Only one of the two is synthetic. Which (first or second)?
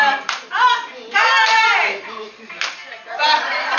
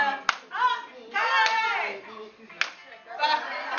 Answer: first